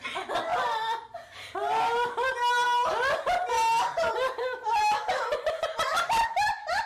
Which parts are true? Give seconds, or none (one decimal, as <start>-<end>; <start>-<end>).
0.0-4.1; 6.2-6.9

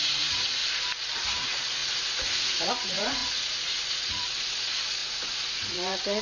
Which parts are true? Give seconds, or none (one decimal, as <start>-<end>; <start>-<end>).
0.6-1.1

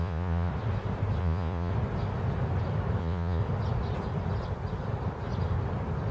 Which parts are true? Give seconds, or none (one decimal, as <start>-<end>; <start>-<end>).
0.5-1.2; 1.7-3.0; 3.4-6.1

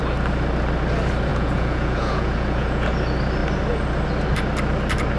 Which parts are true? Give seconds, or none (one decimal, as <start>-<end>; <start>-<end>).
0.0-1.3; 2.9-5.2

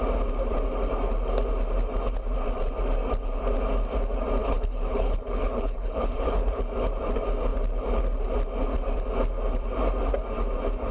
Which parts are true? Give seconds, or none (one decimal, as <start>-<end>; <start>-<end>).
0.0-4.4; 6.6-10.9